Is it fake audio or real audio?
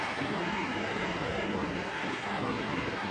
fake